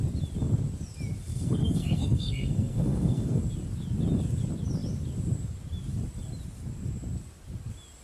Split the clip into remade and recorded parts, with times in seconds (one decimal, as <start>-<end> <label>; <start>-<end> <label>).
0.0-1.3 recorded; 1.3-3.4 remade; 3.4-8.0 recorded